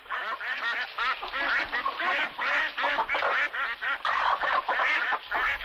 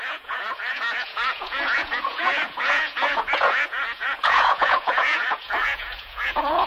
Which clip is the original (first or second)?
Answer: first